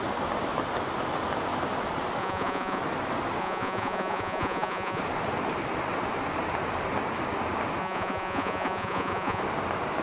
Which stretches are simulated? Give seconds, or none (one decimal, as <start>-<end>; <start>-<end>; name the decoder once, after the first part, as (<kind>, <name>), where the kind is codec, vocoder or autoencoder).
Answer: 2.2-2.8 (vocoder, Vocos); 3.4-5.0; 7.8-9.4